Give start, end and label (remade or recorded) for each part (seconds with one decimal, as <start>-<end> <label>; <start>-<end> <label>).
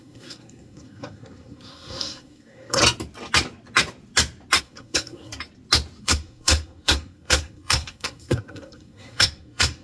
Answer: 0.0-2.8 remade; 2.8-4.6 recorded; 4.6-5.3 remade; 5.3-6.0 recorded; 6.0-9.8 remade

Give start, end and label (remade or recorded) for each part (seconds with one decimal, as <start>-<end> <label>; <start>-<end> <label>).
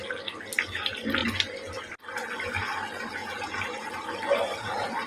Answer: 0.0-5.1 recorded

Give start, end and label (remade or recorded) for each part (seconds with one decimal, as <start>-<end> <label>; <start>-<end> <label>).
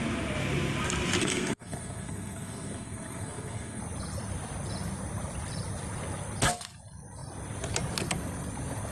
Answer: 0.0-1.2 recorded; 1.2-3.8 remade; 3.8-8.9 recorded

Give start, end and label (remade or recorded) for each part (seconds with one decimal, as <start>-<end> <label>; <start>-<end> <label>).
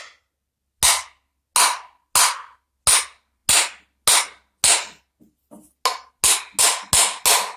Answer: 0.0-7.6 recorded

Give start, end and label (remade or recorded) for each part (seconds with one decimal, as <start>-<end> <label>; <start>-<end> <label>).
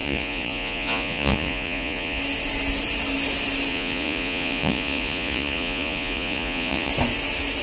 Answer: 0.0-2.2 remade; 2.2-3.7 recorded; 3.7-6.9 remade; 6.9-7.6 recorded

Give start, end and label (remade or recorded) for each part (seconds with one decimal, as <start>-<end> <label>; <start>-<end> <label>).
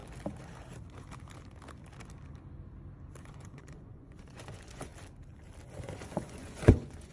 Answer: 0.0-3.2 recorded; 3.2-4.9 remade; 4.9-5.7 recorded; 5.7-7.1 remade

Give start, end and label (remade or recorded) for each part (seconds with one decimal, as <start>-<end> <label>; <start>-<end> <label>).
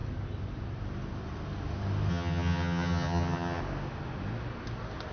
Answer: 0.0-2.1 recorded; 2.1-3.6 remade; 3.6-5.1 recorded